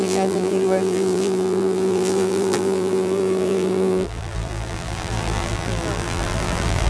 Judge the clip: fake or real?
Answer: fake